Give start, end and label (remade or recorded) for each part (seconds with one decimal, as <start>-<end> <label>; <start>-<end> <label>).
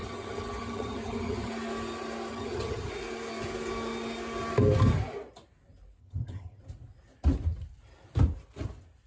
0.0-1.5 remade; 1.5-2.3 recorded; 2.3-2.9 remade; 2.9-6.0 recorded; 6.0-6.6 remade; 6.6-9.1 recorded